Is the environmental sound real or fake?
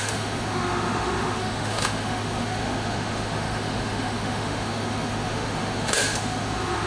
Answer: fake